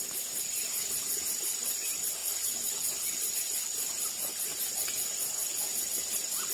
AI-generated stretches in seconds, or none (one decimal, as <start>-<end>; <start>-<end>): none